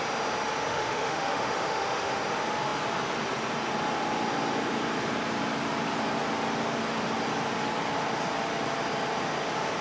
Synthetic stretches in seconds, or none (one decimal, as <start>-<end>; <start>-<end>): 0.7-2.2